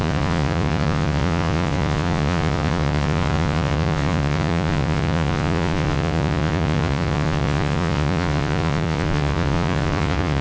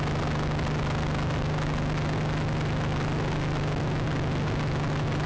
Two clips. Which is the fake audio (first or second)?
first